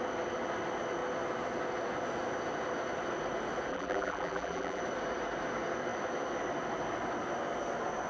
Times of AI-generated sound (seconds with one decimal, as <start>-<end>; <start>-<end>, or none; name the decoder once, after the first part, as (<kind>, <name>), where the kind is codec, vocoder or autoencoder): 3.7-4.8 (vocoder, BigVGAN v2)